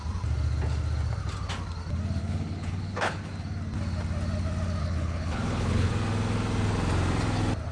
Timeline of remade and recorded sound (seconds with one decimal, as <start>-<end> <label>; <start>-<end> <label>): 0.0-2.2 recorded; 2.2-3.3 remade; 3.3-4.8 recorded; 4.8-5.9 remade; 5.9-7.7 recorded